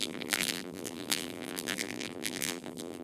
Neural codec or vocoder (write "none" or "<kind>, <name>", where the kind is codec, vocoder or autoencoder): vocoder, BigVGAN v2